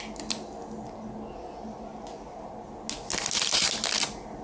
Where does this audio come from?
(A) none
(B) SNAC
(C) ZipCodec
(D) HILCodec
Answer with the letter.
A